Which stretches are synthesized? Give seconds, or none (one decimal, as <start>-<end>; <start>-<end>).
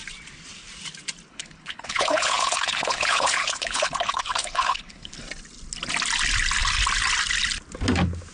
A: 1.3-5.2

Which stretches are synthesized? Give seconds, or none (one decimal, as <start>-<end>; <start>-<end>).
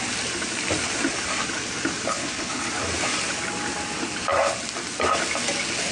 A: 2.1-2.7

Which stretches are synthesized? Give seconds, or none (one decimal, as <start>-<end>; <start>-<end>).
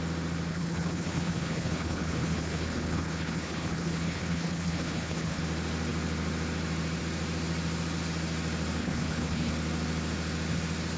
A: 0.5-5.4; 8.8-9.5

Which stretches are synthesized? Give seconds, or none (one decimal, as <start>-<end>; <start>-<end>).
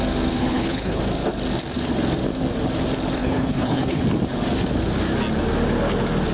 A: 0.4-1.0; 3.2-4.0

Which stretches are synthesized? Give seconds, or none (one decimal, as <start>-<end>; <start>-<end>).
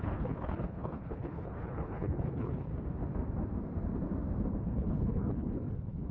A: 0.0-2.7; 4.6-6.1